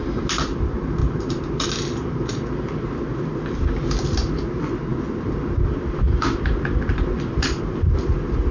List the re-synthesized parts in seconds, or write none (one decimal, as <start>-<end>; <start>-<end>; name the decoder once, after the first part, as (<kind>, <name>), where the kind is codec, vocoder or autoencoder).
none